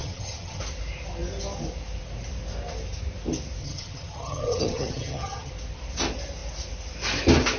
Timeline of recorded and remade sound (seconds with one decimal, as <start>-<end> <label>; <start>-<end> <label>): 0.0-0.6 remade; 0.6-3.6 recorded; 3.6-5.5 remade; 5.5-7.6 recorded